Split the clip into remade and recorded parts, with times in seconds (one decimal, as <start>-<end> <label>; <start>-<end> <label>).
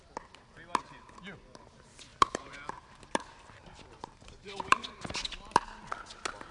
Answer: 0.0-2.1 recorded; 2.1-4.8 remade; 4.8-6.5 recorded